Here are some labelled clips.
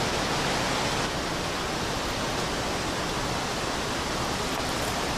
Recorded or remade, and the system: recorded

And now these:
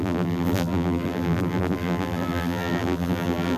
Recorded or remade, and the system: remade, vocoder, BigVGAN v2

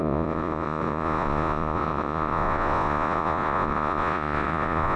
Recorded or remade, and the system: remade, vocoder, Vocos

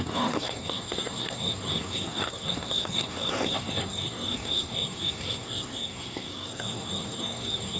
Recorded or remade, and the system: remade, codec, SNAC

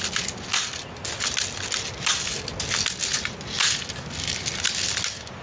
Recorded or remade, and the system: recorded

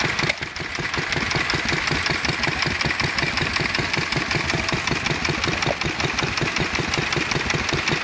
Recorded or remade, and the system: recorded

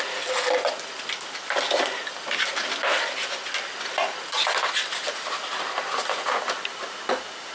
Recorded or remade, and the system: recorded